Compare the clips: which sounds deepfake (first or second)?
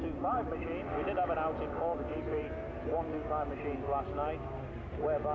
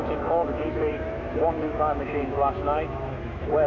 second